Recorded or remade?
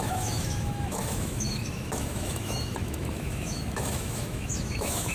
remade